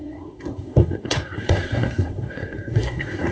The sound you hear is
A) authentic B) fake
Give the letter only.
B